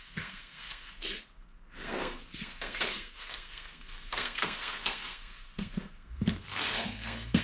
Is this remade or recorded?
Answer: remade